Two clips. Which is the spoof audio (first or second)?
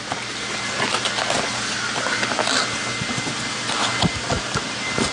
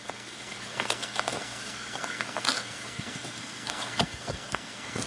second